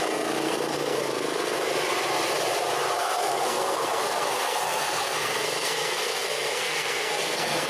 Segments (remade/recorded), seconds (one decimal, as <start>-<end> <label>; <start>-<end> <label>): 0.0-1.7 remade; 1.7-3.0 recorded; 3.0-7.7 remade